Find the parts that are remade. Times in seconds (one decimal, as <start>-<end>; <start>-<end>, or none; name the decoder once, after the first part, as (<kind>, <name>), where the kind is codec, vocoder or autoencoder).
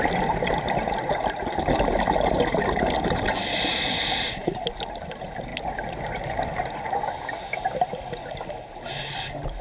none